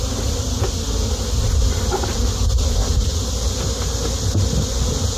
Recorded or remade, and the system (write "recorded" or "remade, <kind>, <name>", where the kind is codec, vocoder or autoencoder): recorded